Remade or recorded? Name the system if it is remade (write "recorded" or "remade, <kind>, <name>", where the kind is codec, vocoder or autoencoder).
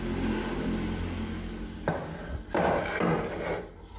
recorded